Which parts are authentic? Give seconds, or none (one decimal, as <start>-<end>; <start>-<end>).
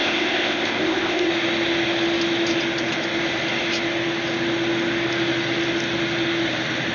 1.3-6.9